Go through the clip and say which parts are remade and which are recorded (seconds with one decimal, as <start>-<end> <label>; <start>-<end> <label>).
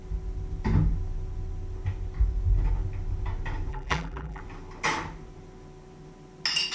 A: 0.0-3.7 recorded; 3.7-4.4 remade; 4.4-6.7 recorded